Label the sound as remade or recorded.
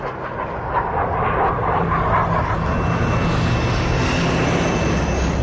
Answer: recorded